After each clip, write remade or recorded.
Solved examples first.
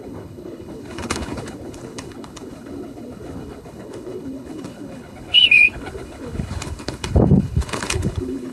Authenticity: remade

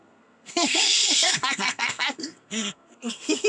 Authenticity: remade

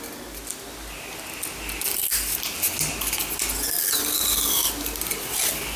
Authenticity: recorded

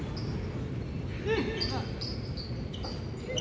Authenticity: recorded